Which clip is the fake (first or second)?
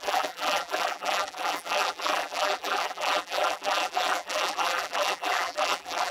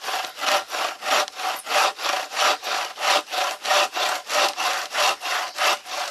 first